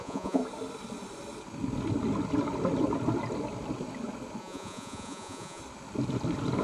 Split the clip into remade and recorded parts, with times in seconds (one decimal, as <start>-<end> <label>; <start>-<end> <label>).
0.0-0.4 remade; 0.4-4.4 recorded; 4.4-5.6 remade; 5.6-6.6 recorded